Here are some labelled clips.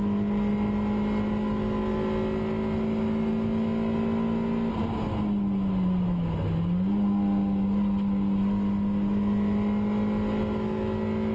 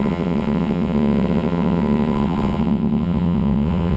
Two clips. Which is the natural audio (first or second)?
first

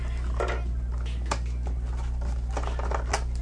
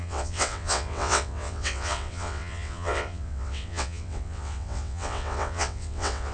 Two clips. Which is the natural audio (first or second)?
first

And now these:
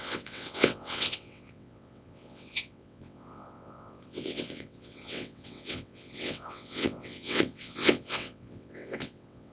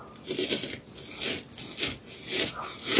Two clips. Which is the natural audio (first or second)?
second